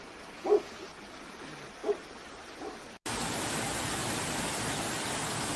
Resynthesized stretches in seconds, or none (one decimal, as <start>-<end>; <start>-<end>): 1.8-2.4